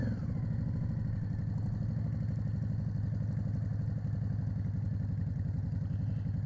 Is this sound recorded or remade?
recorded